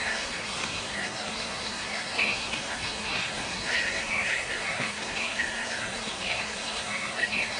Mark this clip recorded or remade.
remade